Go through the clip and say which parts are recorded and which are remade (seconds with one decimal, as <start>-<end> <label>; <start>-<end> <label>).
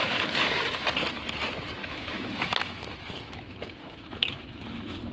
0.0-0.5 remade; 0.5-1.8 recorded; 1.8-5.1 remade